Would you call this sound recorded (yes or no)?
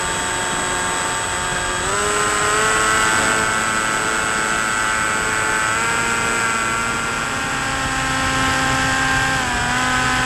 yes